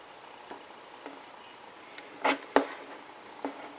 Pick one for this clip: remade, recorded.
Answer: remade